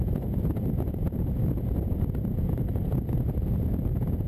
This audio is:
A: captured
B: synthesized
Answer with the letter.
B